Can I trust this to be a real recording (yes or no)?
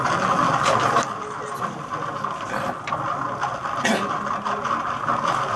yes